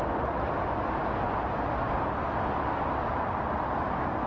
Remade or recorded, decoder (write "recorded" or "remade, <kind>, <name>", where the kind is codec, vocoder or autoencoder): recorded